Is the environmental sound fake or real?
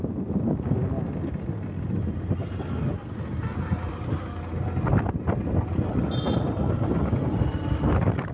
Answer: real